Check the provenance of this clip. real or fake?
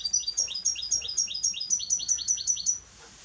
real